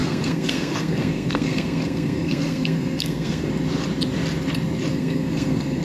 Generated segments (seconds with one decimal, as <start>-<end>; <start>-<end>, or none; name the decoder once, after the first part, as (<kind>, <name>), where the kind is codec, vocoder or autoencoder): 0.0-3.5 (codec, SNAC); 4.9-5.8